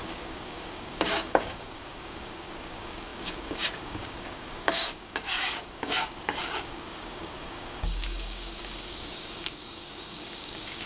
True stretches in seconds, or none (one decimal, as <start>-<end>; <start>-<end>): none